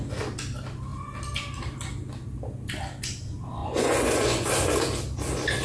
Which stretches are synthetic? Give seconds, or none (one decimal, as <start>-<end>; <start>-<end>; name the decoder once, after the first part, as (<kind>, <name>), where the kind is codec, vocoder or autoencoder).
3.6-4.5 (vocoder, Vocos)